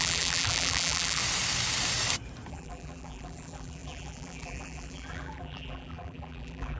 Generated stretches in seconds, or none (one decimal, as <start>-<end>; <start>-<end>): 0.0-1.2; 2.5-6.8